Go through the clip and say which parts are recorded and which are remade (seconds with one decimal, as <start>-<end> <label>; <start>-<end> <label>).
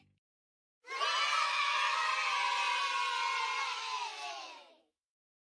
0.0-0.8 remade; 0.8-1.4 recorded; 1.4-2.1 remade; 2.1-3.6 recorded; 3.6-5.5 remade